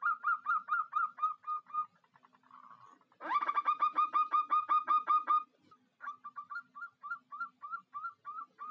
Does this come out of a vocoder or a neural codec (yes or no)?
no